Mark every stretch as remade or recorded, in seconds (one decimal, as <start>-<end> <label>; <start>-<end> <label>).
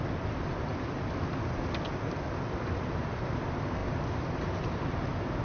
0.0-5.4 recorded